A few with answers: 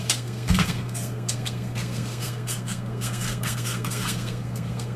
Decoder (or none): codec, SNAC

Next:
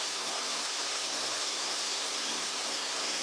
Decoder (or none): codec, SNAC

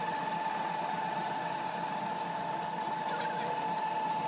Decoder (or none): none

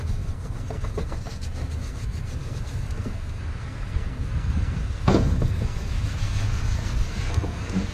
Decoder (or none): codec, SNAC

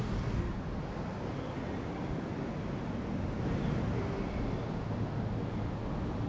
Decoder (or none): none